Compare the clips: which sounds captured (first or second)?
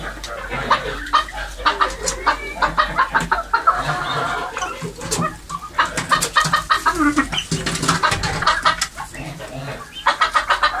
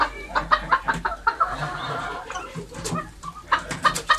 first